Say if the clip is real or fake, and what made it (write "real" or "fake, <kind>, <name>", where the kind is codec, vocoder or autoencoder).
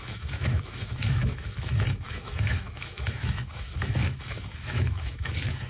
fake, autoencoder, DAC-VAE